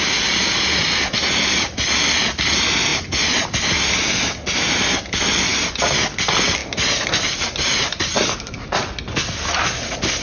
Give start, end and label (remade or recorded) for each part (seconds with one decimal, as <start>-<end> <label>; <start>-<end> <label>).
0.0-10.2 recorded